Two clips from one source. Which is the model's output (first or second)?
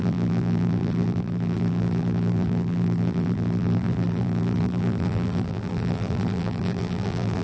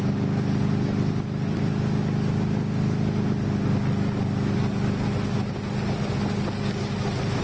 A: first